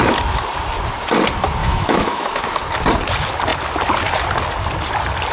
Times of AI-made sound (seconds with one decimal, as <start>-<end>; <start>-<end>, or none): 1.6-2.4